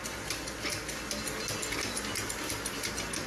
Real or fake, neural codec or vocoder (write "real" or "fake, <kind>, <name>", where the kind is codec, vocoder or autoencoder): real